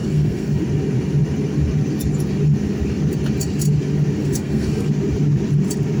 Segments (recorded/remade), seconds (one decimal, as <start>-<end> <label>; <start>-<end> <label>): 0.0-0.6 remade; 0.6-4.2 recorded; 4.2-4.9 remade; 4.9-6.0 recorded